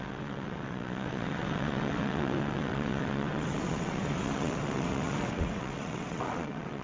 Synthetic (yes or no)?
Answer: yes